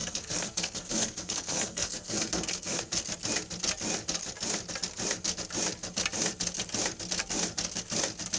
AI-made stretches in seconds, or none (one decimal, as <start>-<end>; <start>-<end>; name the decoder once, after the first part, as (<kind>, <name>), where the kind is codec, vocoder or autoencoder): 0.0-2.8 (codec, SNAC)